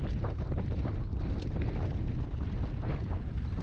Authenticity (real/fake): real